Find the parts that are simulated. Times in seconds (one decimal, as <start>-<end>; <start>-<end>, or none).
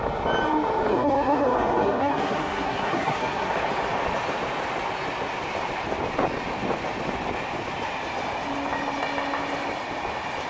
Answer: 0.9-3.5